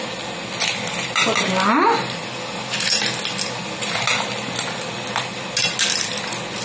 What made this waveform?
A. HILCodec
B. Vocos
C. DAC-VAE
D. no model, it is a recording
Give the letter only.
D